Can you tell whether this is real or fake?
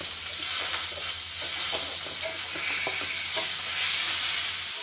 real